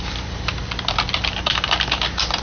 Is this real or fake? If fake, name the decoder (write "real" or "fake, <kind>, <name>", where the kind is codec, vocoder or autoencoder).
real